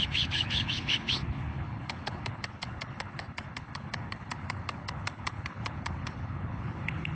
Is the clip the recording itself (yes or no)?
no